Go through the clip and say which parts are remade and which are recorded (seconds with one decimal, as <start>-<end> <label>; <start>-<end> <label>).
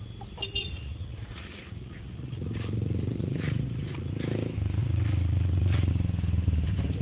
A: 0.0-0.6 recorded; 0.6-4.1 remade; 4.1-4.8 recorded; 4.8-5.9 remade; 5.9-7.0 recorded